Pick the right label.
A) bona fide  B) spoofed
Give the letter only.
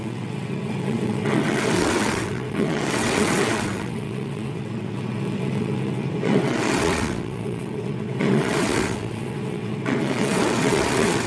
B